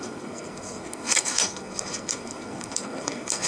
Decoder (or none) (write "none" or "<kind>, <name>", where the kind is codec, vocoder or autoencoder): codec, SNAC